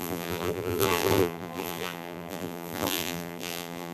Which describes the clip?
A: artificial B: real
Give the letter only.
A